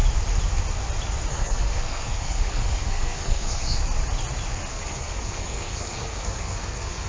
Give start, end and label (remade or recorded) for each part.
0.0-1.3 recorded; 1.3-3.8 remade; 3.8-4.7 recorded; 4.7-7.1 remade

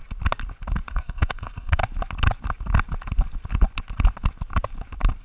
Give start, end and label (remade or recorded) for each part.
0.0-0.9 recorded; 0.9-1.8 remade; 1.8-5.2 recorded

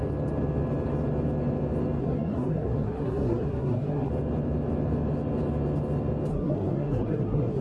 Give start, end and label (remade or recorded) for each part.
0.0-2.0 recorded; 2.0-4.1 remade; 4.1-6.3 recorded; 6.3-7.6 remade

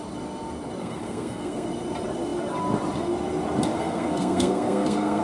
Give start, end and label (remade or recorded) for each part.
0.0-0.8 recorded; 0.8-1.7 remade; 1.7-3.7 recorded; 3.7-5.2 remade